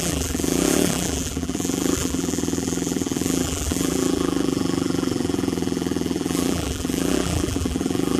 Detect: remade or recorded remade